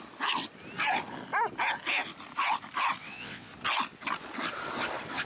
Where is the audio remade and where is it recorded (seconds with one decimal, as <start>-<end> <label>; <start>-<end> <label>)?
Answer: 0.0-3.0 recorded; 3.0-3.5 remade; 3.5-5.2 recorded